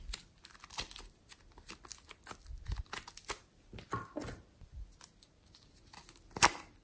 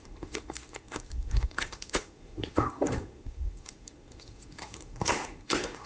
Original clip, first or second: first